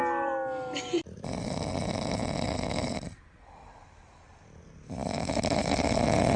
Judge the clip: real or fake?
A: real